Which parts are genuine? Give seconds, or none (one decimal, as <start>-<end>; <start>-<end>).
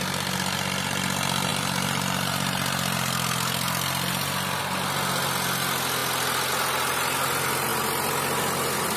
0.0-9.0